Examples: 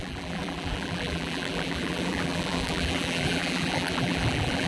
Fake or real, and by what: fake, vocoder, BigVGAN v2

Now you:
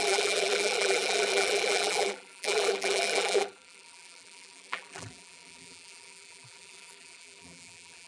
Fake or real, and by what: fake, vocoder, BigVGAN v2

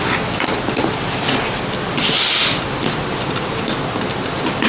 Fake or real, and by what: real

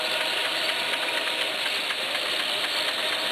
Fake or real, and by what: real